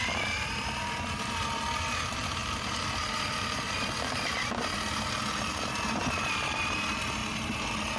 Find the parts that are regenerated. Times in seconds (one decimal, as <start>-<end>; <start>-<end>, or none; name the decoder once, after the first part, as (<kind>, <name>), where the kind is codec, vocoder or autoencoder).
2.4-4.5 (vocoder, BigVGAN v2)